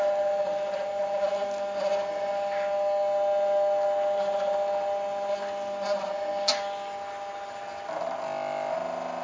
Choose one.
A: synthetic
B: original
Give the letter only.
B